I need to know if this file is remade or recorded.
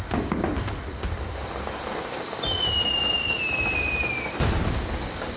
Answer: recorded